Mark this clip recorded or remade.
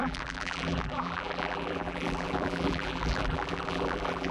remade